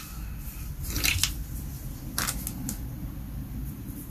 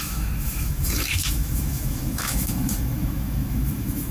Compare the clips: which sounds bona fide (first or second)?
first